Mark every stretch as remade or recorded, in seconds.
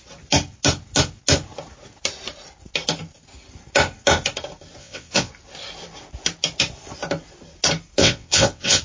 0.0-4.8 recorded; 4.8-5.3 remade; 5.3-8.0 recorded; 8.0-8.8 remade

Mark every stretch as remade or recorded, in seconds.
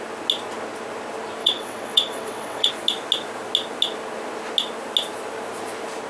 0.0-1.4 recorded; 1.4-2.7 remade; 2.7-6.1 recorded